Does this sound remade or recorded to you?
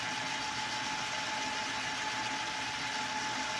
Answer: recorded